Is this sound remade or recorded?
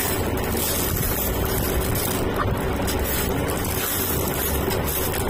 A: recorded